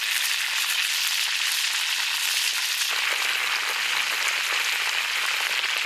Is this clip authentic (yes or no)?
yes